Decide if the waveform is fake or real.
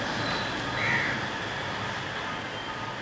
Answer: real